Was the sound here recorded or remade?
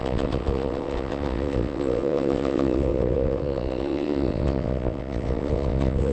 remade